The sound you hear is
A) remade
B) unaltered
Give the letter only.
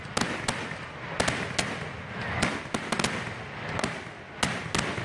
B